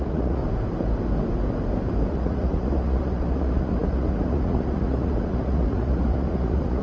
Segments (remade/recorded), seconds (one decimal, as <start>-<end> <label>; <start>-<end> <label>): 0.0-0.4 remade; 0.4-2.1 recorded; 2.1-6.8 remade